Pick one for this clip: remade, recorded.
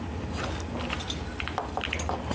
recorded